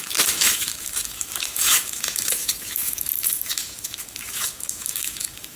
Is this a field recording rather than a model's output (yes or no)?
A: no